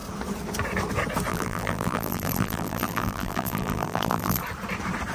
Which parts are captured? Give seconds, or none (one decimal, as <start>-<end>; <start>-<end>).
0.0-1.3; 4.4-5.1